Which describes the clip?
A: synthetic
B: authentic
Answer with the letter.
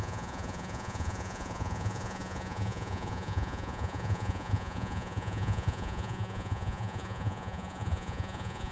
A